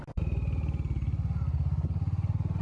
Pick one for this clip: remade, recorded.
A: recorded